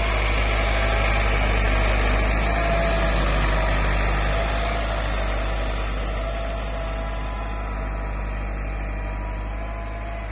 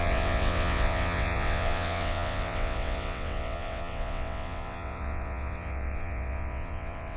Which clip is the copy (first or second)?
second